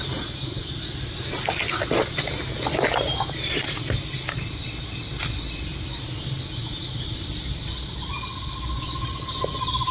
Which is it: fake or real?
real